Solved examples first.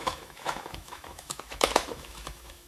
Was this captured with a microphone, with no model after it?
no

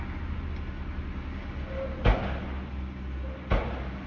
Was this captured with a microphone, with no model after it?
yes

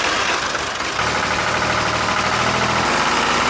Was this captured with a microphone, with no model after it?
yes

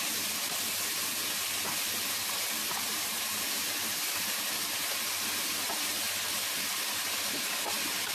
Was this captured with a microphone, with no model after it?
yes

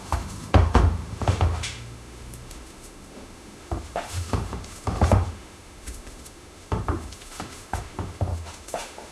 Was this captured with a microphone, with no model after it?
no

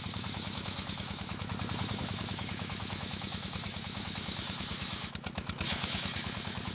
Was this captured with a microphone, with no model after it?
no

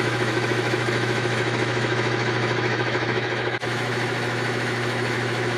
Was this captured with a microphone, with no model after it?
no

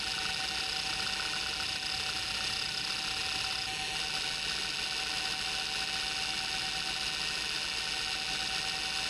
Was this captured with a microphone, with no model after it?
yes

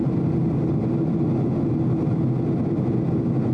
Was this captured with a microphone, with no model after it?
yes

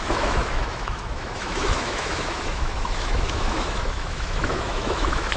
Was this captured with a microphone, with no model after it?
no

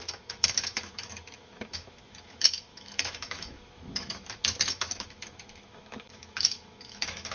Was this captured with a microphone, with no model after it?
no